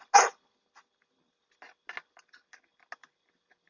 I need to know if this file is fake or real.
real